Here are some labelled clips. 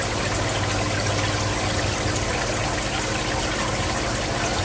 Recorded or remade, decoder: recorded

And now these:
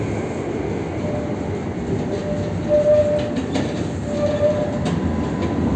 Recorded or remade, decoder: recorded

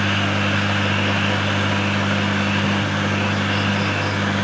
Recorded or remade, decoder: recorded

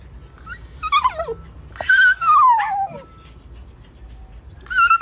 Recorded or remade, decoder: recorded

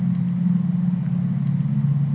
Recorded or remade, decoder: recorded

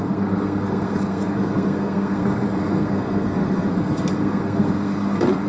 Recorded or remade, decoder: remade, codec, SNAC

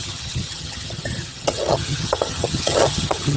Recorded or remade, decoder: remade, vocoder, HiFi-GAN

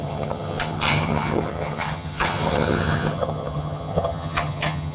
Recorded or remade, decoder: remade, vocoder, HiFi-GAN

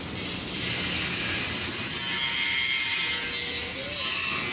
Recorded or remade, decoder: recorded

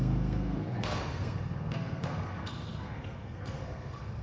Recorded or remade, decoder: remade, codec, SNAC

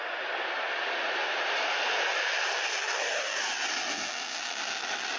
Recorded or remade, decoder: recorded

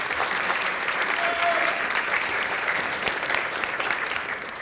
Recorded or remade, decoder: remade, vocoder, BigVGAN v2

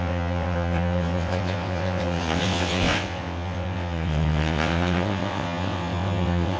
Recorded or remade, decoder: remade, vocoder, WaveNeXt